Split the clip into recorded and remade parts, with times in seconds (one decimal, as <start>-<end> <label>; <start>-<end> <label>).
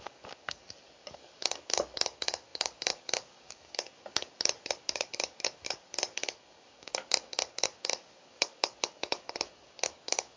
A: 0.0-10.4 remade